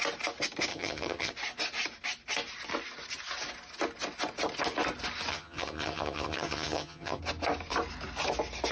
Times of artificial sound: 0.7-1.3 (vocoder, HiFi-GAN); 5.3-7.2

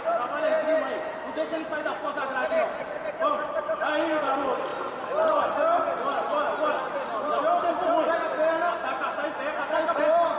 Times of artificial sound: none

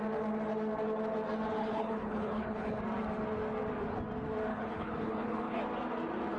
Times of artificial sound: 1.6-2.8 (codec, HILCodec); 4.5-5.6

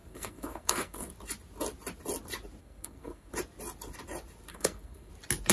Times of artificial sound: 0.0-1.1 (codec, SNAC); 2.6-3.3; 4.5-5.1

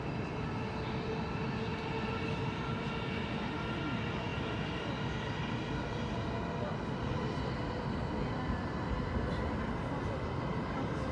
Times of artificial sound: none

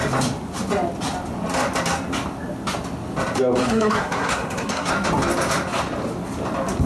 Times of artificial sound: 3.6-4.9 (codec, SNAC)